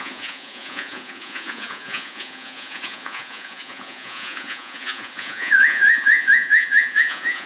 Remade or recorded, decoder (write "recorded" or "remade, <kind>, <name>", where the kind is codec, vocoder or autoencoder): remade, vocoder, Vocos